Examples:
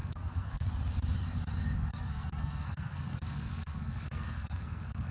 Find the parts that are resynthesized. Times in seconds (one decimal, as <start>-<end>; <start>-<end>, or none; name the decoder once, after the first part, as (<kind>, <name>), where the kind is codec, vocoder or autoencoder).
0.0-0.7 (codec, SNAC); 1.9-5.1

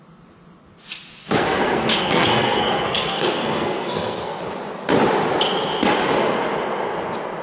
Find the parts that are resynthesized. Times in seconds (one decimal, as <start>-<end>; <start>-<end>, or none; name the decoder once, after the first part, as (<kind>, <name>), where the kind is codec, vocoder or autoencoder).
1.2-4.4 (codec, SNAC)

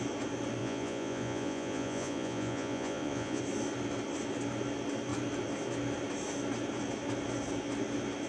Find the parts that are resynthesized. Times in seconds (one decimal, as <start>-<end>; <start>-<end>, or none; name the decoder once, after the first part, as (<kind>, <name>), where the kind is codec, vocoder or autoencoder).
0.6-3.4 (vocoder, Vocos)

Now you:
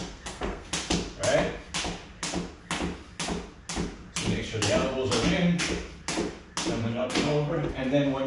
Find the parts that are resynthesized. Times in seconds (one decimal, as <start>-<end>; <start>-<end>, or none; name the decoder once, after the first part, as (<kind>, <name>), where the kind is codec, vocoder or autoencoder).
0.0-0.7 (codec, SNAC); 6.9-7.7

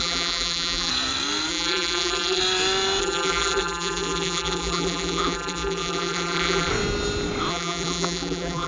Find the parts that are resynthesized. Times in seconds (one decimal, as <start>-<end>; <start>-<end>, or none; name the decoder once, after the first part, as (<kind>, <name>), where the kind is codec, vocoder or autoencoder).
0.0-0.9 (vocoder, BigVGAN v2); 1.5-2.4; 3.0-6.7; 7.5-8.7